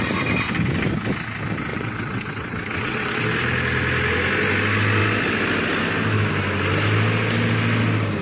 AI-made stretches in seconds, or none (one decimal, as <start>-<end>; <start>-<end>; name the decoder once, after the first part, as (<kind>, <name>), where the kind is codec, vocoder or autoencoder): 1.7-3.2 (vocoder, WaveNeXt)